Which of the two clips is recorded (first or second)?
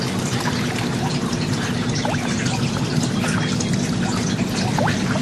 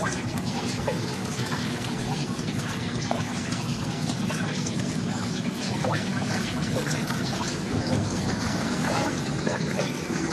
first